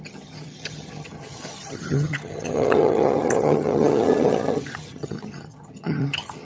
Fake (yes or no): yes